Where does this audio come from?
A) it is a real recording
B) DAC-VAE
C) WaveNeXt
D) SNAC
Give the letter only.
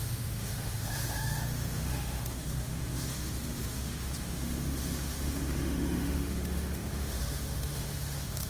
B